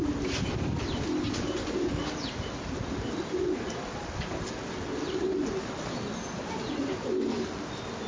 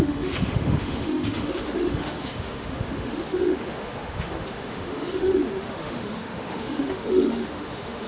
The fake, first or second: second